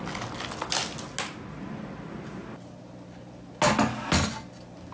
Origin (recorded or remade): recorded